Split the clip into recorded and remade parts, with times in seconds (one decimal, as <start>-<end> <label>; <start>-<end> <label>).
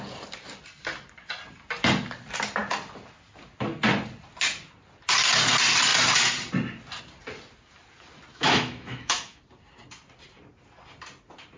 0.0-8.3 recorded; 8.3-9.4 remade; 9.4-11.6 recorded